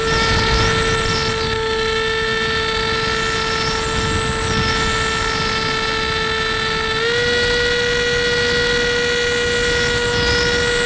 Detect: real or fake real